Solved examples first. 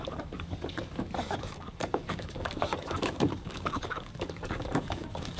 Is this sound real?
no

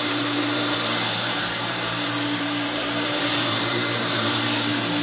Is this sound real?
no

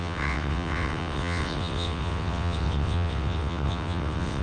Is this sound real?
no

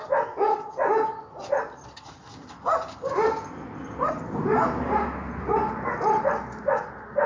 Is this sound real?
yes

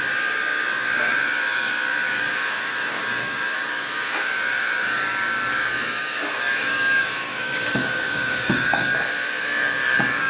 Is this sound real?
no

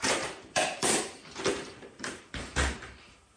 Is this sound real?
no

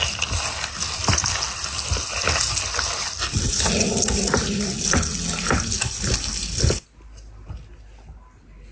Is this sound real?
yes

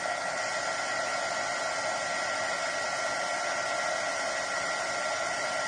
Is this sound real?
yes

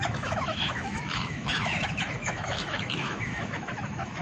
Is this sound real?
no